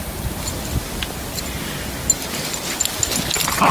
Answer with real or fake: real